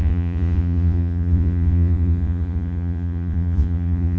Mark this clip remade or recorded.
remade